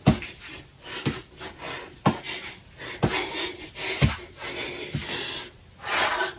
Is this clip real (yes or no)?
yes